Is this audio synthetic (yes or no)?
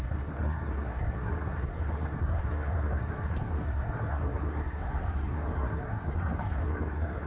yes